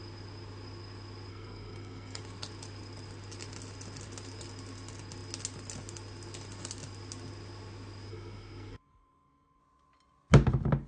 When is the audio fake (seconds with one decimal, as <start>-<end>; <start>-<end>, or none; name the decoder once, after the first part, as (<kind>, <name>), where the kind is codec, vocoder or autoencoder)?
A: 1.3-2.2 (codec, SNAC); 8.1-9.6